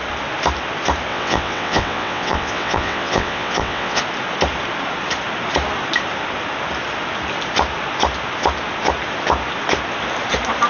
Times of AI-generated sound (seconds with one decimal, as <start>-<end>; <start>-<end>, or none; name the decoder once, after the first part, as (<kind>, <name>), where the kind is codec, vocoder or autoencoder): 1.1-4.0 (vocoder, WaveNeXt)